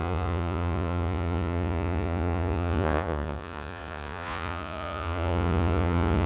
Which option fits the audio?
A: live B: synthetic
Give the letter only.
B